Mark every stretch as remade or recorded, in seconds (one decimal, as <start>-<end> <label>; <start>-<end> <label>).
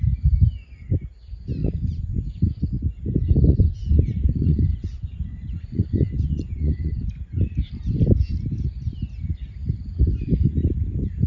0.0-1.6 recorded; 1.6-2.4 remade; 2.4-3.5 recorded; 3.5-7.0 remade; 7.0-11.3 recorded